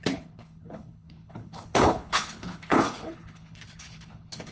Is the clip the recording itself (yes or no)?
no